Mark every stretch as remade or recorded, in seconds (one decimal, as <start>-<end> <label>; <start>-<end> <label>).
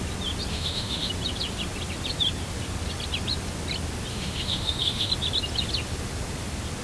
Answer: 0.0-0.5 recorded; 0.5-1.1 remade; 1.1-4.1 recorded; 4.1-5.1 remade; 5.1-6.8 recorded